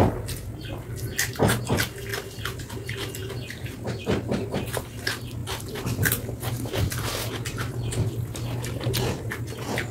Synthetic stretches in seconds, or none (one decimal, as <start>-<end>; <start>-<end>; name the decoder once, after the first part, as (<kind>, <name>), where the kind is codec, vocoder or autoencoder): none